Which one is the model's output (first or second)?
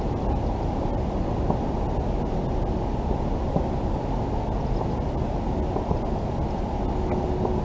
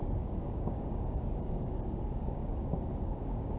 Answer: second